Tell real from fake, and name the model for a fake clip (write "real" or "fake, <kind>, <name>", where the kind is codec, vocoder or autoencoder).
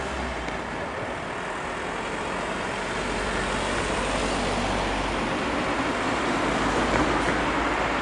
real